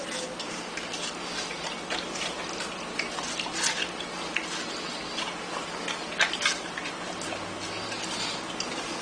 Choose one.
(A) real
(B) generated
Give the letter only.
A